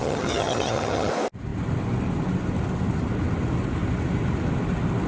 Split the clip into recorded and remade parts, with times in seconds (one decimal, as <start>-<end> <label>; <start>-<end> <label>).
0.0-1.1 remade; 1.1-5.1 recorded